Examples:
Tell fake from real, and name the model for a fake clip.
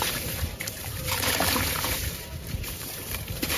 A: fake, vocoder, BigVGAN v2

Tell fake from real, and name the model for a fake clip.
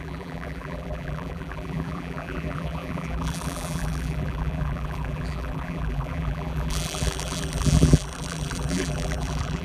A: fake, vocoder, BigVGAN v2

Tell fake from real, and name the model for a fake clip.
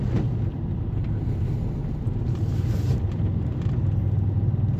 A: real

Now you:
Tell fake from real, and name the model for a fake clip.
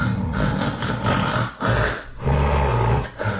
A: real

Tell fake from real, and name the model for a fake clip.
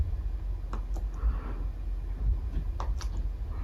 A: real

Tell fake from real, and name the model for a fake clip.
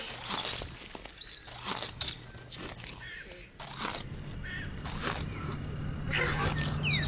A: real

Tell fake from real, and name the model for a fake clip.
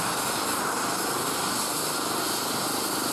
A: real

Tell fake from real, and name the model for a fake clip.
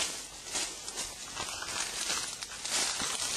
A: real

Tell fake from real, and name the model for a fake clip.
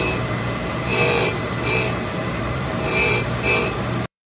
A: fake, vocoder, BigVGAN v2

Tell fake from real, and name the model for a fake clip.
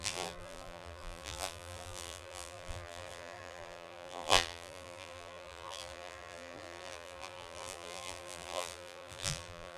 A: fake, vocoder, BigVGAN v2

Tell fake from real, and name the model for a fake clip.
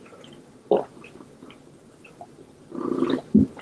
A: fake, vocoder, BigVGAN v2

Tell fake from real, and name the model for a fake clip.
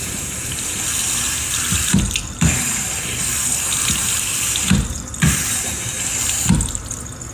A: fake, vocoder, BigVGAN v2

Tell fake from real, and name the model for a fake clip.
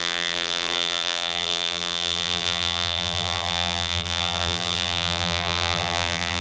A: fake, vocoder, BigVGAN v2